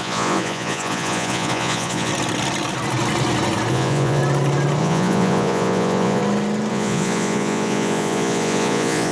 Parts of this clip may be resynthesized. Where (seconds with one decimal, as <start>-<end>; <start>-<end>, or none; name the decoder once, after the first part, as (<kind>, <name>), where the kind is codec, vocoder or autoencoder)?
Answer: 0.0-2.1 (vocoder, Vocos); 3.7-4.2; 4.8-6.2; 6.7-9.1